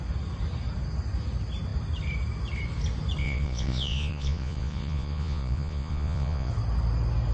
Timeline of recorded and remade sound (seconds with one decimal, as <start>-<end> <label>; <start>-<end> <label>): 0.0-3.2 recorded; 3.2-6.5 remade; 6.5-7.3 recorded